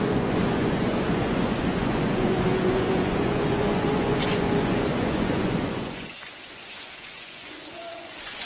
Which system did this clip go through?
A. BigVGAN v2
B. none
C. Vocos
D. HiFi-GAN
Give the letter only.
C